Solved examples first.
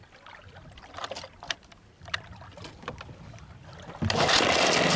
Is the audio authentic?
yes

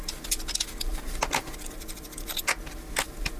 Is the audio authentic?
yes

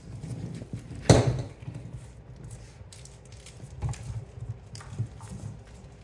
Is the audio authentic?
yes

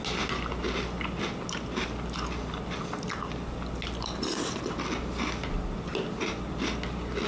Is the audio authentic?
yes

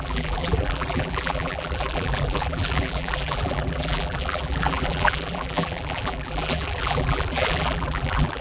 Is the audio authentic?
no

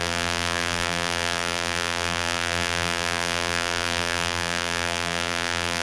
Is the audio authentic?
no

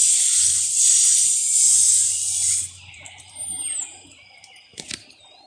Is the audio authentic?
no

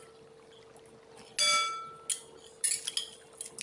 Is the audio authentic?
yes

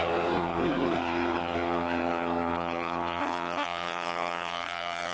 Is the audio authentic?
no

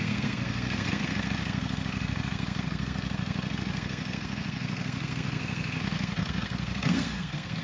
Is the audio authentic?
no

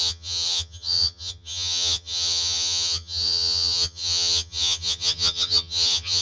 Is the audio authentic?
no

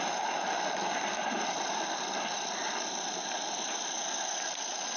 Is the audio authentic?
no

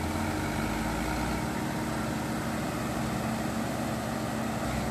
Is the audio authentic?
yes